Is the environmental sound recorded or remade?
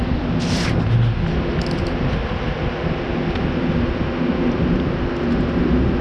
recorded